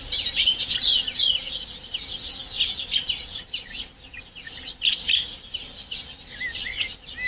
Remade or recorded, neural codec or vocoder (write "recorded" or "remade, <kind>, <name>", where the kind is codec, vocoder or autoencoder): recorded